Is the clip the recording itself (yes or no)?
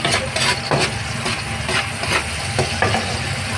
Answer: yes